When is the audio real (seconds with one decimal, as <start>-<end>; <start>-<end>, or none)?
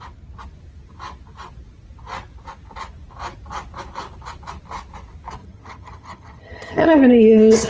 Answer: 0.0-5.4